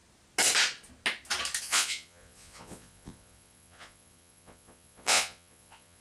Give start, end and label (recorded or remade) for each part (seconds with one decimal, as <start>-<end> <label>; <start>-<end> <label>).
0.0-1.6 recorded; 1.6-6.0 remade

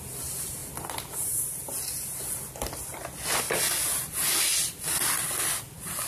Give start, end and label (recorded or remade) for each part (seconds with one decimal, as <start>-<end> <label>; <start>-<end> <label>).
0.0-6.1 recorded

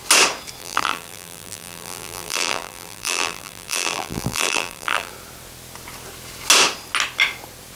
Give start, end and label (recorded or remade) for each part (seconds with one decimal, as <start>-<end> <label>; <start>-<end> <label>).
0.0-0.6 recorded; 0.6-5.1 remade; 5.1-7.8 recorded

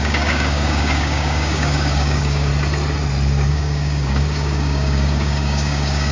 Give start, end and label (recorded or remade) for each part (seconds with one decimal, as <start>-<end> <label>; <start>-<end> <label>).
0.0-2.5 remade; 2.5-3.5 recorded; 3.5-6.1 remade

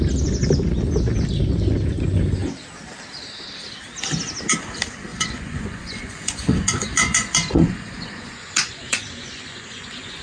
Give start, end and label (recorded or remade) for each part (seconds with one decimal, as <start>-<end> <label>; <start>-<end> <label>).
0.0-5.1 recorded; 5.1-10.2 remade

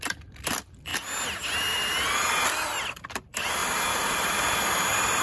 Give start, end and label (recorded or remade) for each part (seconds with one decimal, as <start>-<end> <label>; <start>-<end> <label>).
0.0-0.9 remade; 0.9-1.6 recorded; 1.6-5.2 remade

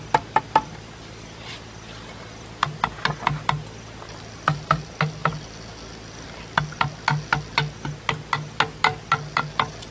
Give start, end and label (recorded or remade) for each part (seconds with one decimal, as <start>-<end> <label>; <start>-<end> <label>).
0.0-9.9 recorded